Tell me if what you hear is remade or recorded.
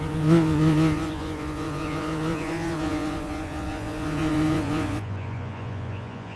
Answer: remade